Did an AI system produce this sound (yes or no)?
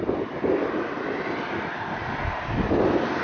no